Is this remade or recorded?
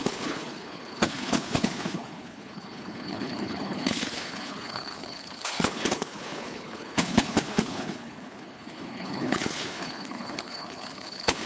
remade